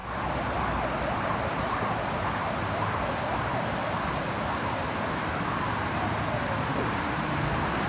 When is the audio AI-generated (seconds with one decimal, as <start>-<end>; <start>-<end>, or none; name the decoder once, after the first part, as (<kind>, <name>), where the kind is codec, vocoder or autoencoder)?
none